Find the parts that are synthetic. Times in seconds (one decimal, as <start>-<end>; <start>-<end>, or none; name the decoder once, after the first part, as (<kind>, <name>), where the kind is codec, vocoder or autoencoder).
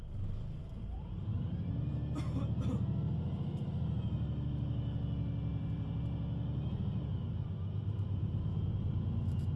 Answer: 0.6-1.9 (vocoder, BigVGAN v2); 5.5-6.0; 7.8-9.6